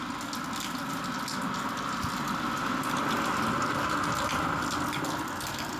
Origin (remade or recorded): recorded